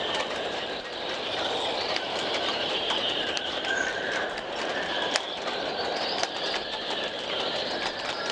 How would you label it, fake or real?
fake